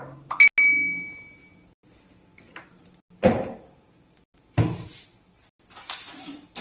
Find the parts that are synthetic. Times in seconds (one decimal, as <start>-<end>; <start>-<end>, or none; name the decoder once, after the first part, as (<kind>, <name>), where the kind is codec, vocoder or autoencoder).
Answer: none